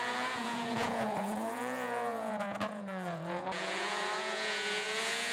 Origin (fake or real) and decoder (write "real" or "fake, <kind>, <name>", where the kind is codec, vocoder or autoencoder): fake, vocoder, Vocos